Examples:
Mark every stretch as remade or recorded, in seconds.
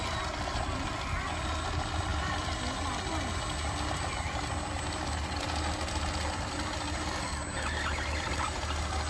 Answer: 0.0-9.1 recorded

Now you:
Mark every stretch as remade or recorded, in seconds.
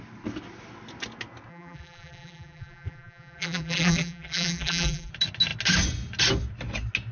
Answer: 0.0-1.5 recorded; 1.5-5.1 remade; 5.1-7.1 recorded